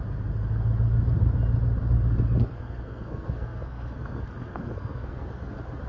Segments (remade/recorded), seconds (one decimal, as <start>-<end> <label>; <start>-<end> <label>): 0.0-2.4 recorded; 2.4-5.4 remade; 5.4-5.9 recorded